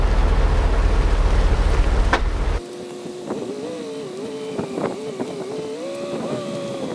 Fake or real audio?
real